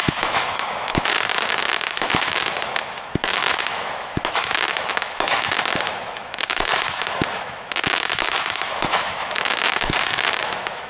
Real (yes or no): no